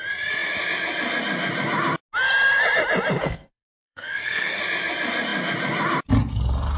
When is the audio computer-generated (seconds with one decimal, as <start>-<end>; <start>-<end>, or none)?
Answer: 3.2-4.6